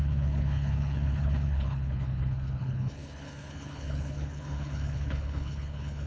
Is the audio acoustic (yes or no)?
no